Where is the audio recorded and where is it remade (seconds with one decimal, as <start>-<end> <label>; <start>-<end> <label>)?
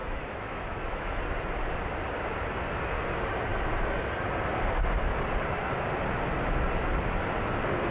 0.0-1.2 remade; 1.2-7.9 recorded